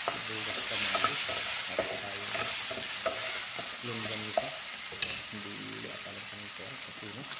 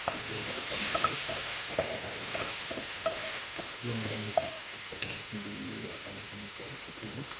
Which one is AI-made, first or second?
second